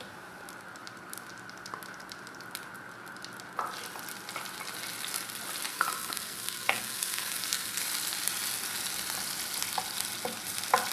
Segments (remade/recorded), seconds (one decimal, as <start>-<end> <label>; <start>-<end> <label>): 0.0-5.7 recorded; 5.7-7.8 remade; 7.8-10.9 recorded